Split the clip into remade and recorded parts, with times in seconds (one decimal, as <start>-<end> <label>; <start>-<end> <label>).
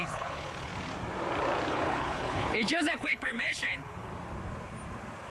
0.0-0.7 remade; 0.7-1.7 recorded; 1.7-4.1 remade; 4.1-5.3 recorded